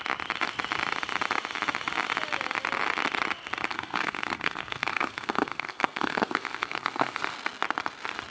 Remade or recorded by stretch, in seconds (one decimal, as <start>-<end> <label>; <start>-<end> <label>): 0.0-3.7 recorded; 3.7-7.2 remade; 7.2-8.3 recorded